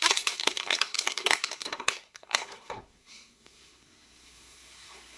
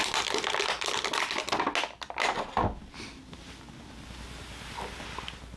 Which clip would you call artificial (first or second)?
first